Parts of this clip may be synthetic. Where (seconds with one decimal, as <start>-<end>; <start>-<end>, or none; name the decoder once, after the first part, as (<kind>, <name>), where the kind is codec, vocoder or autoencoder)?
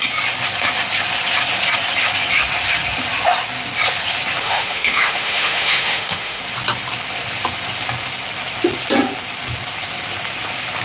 4.4-6.4 (autoencoder, DAC-VAE)